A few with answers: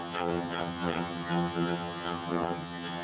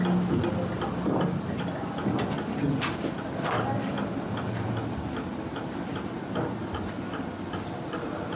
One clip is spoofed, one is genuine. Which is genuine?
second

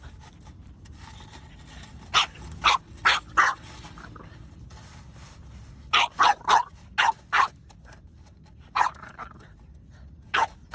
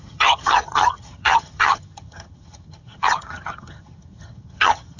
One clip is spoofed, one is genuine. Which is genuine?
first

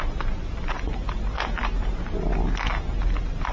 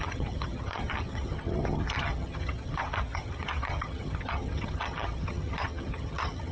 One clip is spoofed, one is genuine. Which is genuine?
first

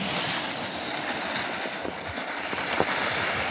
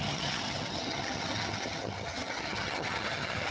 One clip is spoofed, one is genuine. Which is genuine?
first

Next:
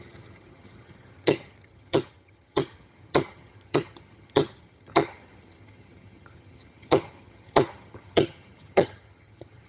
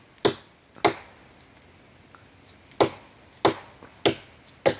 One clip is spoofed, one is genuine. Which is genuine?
second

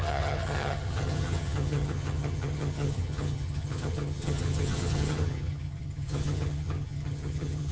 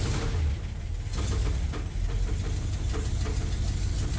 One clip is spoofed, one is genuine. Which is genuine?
second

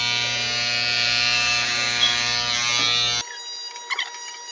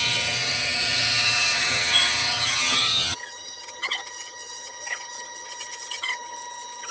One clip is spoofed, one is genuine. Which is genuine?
first